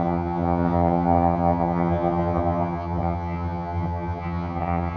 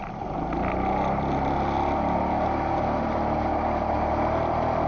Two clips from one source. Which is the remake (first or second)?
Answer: first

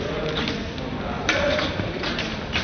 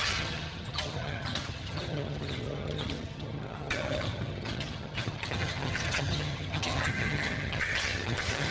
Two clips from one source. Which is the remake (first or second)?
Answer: second